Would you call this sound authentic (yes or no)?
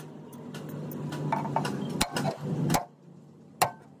yes